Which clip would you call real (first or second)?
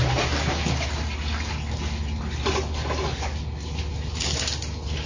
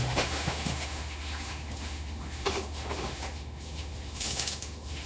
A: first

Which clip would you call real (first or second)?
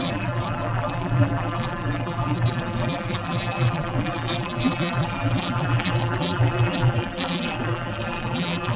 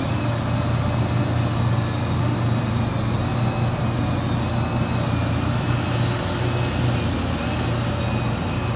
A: second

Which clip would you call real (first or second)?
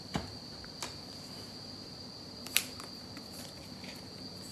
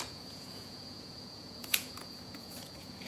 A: first